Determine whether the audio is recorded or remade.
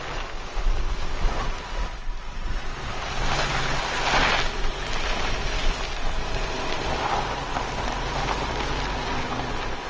recorded